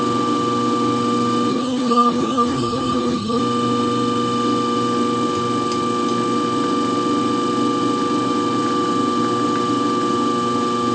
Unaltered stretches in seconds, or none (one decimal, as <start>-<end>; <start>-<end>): 0.0-1.5; 3.4-10.9